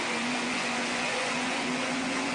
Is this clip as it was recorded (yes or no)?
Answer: no